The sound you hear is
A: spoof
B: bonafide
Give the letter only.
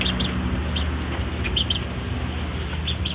B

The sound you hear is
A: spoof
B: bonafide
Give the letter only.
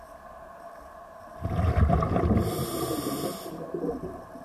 B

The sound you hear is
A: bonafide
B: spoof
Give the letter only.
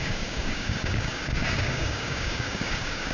B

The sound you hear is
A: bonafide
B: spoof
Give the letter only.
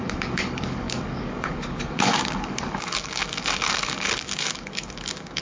B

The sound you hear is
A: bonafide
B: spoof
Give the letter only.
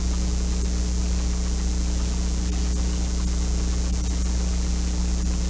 A